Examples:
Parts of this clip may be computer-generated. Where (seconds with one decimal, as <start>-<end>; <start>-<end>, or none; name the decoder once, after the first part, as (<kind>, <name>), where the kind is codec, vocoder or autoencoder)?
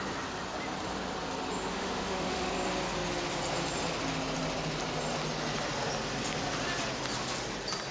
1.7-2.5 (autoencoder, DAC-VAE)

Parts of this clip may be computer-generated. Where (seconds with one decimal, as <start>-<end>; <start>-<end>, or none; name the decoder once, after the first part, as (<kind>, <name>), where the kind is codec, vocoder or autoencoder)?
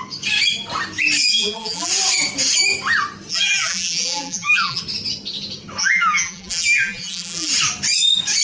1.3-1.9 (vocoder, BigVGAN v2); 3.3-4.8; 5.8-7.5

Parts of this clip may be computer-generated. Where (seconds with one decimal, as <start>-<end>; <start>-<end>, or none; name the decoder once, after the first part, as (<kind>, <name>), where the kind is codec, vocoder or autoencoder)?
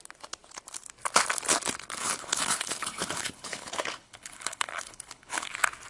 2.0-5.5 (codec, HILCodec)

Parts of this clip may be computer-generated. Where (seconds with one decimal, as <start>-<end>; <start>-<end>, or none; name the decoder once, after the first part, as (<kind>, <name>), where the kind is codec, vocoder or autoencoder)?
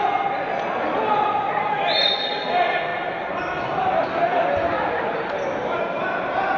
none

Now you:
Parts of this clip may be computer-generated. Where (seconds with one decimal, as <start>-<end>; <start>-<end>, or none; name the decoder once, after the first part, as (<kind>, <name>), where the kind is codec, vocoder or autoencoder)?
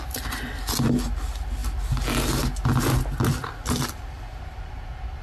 none